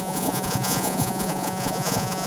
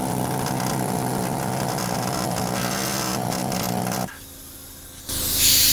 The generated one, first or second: first